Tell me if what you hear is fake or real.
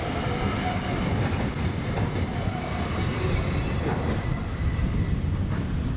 real